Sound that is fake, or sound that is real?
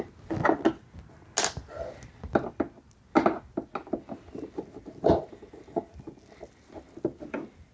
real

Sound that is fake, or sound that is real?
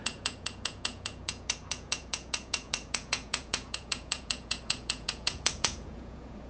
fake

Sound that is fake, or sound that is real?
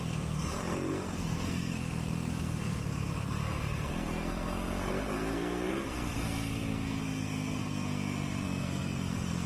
fake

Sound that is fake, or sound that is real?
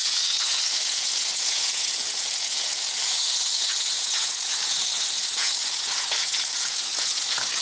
fake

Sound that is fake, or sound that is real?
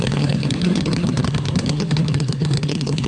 fake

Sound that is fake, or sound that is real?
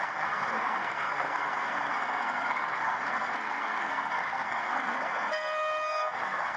fake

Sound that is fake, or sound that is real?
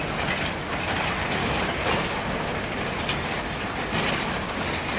real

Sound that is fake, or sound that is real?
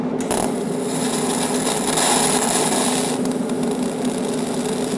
real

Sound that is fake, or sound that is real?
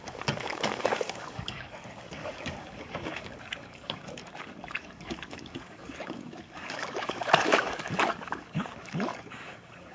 fake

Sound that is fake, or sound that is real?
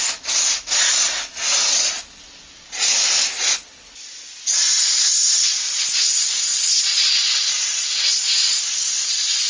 real